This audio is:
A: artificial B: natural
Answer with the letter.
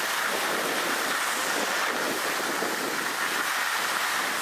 B